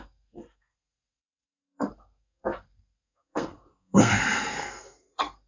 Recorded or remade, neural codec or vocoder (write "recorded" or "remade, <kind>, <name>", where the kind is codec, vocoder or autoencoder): remade, codec, SNAC